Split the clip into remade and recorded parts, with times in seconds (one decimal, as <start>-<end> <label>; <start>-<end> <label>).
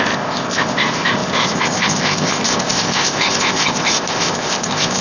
0.0-5.0 remade